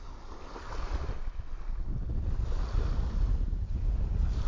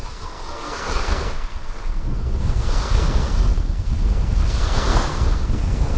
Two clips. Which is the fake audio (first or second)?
second